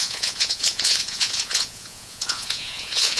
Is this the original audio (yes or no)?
no